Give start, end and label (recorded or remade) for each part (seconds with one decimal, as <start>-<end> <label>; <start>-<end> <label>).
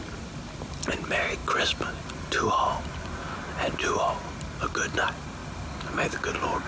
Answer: 0.0-6.7 recorded